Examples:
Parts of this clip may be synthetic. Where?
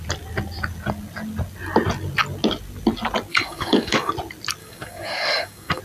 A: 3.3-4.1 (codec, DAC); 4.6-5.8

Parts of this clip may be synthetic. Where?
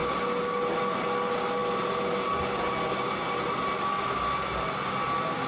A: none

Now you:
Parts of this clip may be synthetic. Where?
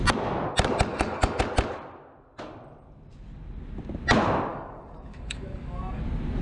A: 0.9-1.4 (codec, DAC); 4.5-6.0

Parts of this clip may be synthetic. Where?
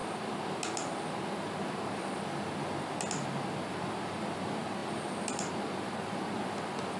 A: none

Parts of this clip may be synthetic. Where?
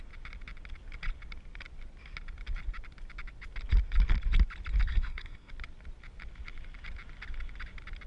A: 4.9-5.5 (codec, SNAC)